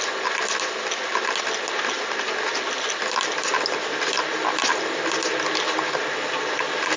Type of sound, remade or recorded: recorded